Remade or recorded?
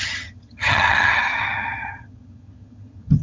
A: remade